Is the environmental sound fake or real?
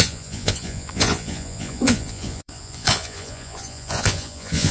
fake